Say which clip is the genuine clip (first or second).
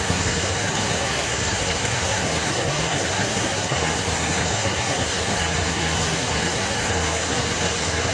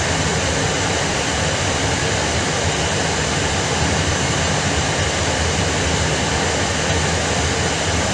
second